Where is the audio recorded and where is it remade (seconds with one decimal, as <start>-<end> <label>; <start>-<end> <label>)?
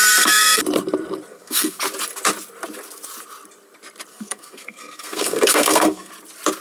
0.0-0.6 remade; 0.6-1.3 recorded; 1.3-1.8 remade; 1.8-4.1 recorded; 4.1-6.1 remade; 6.1-6.6 recorded